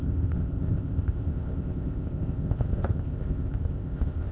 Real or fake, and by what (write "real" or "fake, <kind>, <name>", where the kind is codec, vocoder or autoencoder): fake, codec, ZipCodec